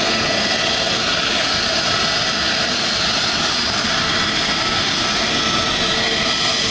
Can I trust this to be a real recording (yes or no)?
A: yes